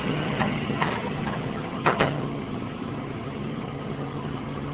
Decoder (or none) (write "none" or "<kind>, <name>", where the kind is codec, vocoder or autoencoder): vocoder, HiFi-GAN